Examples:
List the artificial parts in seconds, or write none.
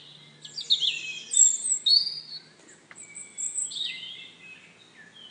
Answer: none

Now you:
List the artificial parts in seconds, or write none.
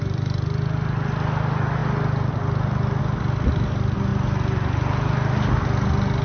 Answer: none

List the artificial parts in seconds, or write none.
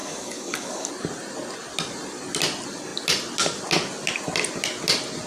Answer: 0.0-0.9 (codec, DAC)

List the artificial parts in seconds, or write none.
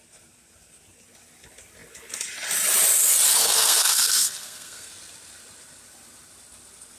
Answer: 3.4-4.9 (codec, SNAC)